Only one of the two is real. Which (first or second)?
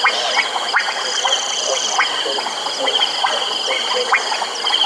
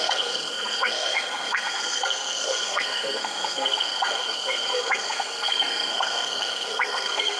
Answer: first